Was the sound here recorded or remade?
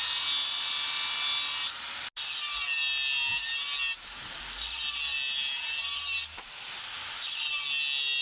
recorded